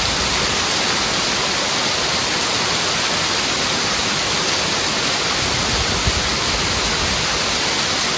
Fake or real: real